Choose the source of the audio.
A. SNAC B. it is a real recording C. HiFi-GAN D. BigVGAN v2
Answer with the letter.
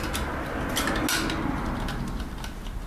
B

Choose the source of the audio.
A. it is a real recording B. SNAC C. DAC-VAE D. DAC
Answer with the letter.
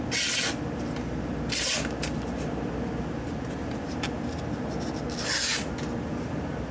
A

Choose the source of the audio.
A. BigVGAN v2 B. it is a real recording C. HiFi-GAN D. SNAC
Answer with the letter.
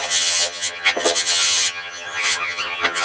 C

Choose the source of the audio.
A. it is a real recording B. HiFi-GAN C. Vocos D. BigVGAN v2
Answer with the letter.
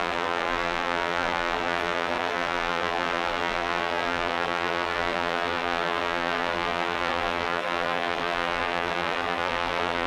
D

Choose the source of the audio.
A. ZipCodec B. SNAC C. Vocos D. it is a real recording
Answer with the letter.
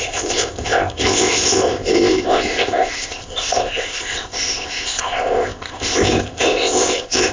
A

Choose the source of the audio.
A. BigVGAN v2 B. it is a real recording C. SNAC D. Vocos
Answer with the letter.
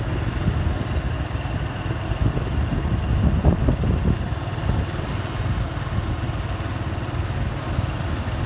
B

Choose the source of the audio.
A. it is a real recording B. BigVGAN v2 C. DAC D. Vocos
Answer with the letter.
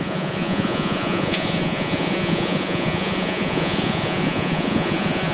D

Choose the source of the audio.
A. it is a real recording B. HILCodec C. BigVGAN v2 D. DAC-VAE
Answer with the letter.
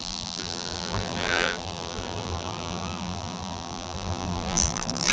C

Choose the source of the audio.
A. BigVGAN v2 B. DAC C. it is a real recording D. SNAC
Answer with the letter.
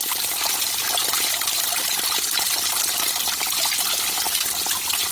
C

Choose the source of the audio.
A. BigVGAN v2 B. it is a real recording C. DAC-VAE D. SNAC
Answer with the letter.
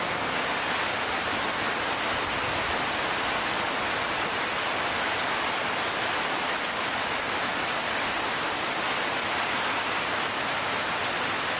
B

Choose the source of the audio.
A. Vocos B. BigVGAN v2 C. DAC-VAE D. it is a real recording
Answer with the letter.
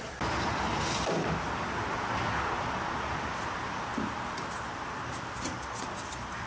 B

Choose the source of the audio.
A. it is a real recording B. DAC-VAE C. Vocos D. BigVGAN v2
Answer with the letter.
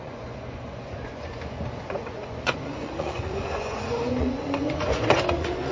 C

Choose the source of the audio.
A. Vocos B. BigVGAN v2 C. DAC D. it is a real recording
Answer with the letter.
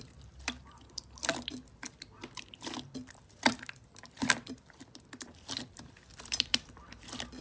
B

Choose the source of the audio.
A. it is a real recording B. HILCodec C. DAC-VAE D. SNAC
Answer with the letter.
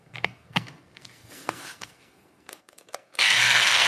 D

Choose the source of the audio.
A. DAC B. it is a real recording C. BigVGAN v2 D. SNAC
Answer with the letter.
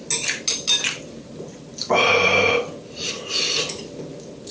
B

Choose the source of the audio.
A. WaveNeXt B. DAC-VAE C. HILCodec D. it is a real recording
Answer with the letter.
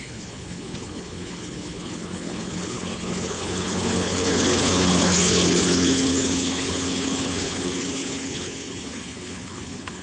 C